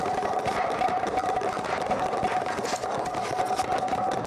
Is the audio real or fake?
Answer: real